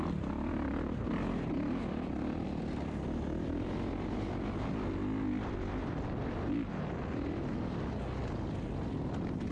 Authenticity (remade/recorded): recorded